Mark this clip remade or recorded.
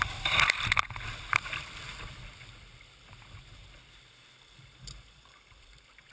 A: recorded